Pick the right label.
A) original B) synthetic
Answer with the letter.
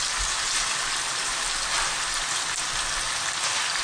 A